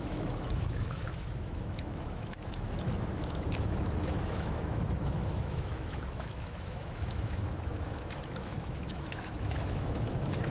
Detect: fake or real fake